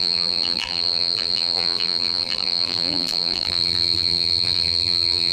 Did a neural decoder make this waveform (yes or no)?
yes